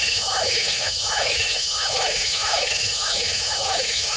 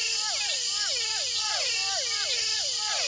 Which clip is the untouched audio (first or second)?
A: second